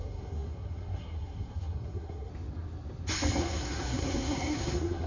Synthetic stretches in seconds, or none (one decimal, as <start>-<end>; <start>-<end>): 0.0-2.3; 3.4-5.1